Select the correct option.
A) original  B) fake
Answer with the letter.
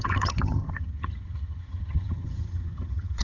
B